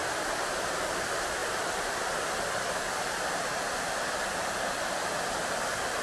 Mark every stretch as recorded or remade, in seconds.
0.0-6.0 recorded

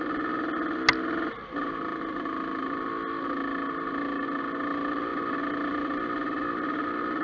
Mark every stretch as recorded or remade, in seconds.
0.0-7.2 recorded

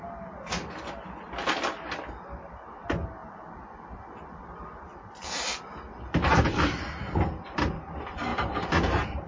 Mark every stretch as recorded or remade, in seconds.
0.0-9.3 recorded